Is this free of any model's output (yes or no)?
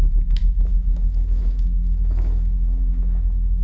no